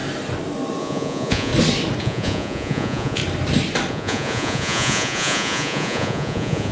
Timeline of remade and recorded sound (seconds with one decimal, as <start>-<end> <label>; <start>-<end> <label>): 0.0-0.8 recorded; 0.8-1.5 remade; 1.5-2.0 recorded; 2.0-3.2 remade; 3.2-3.9 recorded; 3.9-6.7 remade